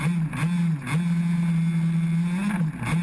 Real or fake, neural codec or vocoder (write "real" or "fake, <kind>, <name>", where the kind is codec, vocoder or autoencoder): real